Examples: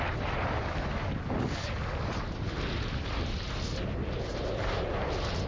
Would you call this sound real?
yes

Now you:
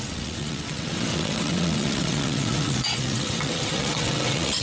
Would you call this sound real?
no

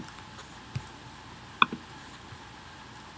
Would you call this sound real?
yes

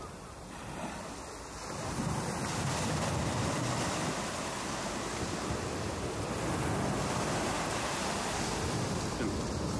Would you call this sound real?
yes